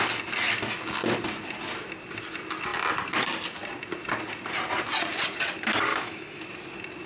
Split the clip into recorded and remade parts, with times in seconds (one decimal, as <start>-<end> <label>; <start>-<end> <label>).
0.0-5.9 recorded; 5.9-6.4 remade; 6.4-7.1 recorded